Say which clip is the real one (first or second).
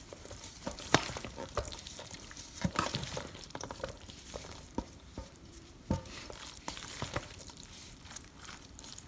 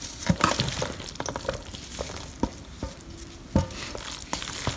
second